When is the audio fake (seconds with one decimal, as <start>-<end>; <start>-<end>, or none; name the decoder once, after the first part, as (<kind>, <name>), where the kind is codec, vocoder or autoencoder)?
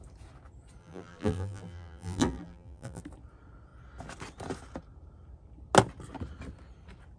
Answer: 0.8-3.0 (vocoder, BigVGAN v2)